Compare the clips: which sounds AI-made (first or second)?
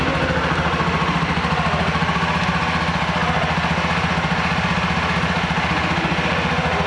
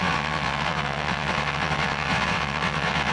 second